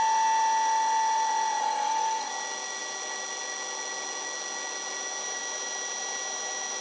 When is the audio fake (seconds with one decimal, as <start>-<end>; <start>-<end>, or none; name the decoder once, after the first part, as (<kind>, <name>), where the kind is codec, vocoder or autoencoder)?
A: 1.6-2.3 (codec, SNAC)